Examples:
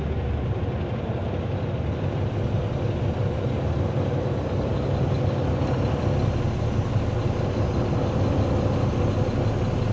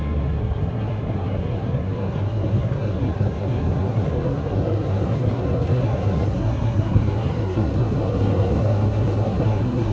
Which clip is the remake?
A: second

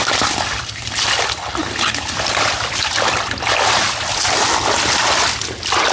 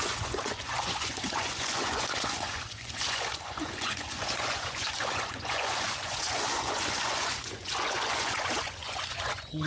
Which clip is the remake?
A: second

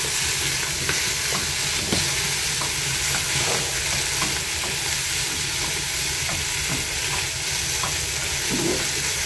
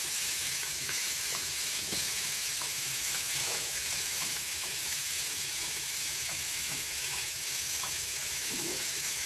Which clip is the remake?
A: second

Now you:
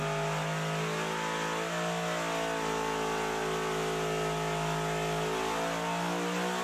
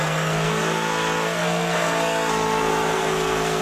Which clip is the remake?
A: second